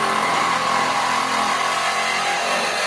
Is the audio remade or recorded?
recorded